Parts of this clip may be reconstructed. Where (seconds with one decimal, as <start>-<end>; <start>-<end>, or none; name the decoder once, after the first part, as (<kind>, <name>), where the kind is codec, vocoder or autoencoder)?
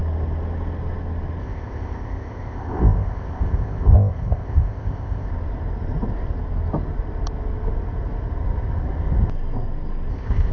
1.4-5.3 (codec, ZipCodec); 10.1-10.5